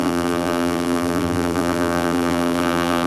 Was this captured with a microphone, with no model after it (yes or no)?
no